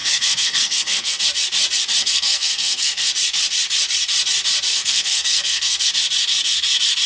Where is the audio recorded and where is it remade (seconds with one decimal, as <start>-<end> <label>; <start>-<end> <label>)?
0.0-1.2 remade; 1.2-2.0 recorded; 2.0-3.1 remade; 3.1-4.7 recorded; 4.7-5.9 remade; 5.9-7.1 recorded